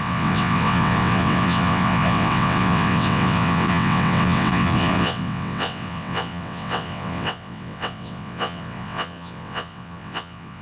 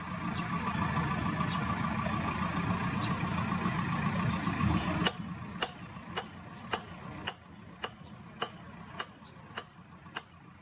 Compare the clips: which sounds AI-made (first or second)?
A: first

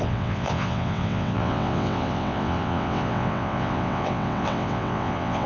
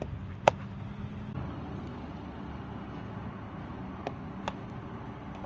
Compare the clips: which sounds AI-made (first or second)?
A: first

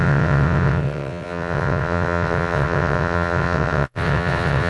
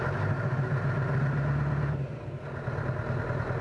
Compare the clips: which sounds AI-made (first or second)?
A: first